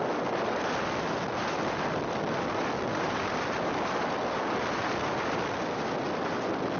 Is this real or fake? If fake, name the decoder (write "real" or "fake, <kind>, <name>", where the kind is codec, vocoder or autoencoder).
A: real